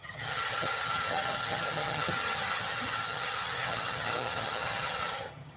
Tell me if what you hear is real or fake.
fake